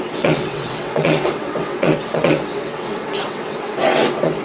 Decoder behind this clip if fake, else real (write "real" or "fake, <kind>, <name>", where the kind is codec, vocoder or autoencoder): fake, vocoder, WaveNeXt